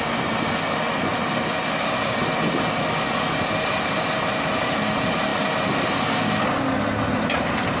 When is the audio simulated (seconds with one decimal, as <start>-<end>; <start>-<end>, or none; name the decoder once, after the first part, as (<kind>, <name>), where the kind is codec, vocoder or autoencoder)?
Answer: none